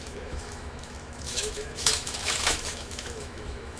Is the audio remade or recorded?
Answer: remade